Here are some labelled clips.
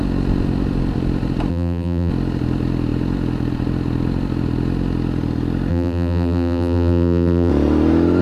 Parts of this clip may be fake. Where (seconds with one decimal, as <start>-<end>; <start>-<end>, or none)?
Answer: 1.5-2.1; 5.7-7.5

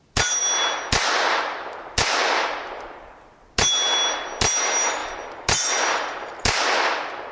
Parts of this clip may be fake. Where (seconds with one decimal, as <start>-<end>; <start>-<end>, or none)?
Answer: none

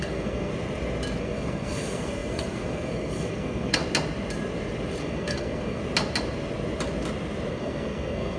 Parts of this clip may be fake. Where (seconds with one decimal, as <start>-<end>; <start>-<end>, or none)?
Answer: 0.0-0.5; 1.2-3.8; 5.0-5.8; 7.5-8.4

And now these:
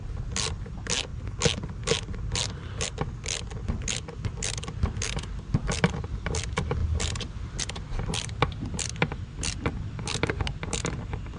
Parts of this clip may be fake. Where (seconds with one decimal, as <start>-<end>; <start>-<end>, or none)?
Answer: none